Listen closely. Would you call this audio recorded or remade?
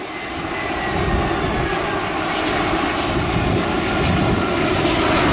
recorded